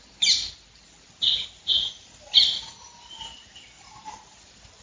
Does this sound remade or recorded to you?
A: recorded